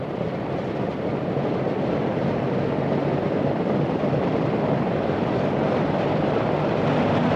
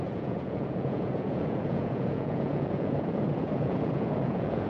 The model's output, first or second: second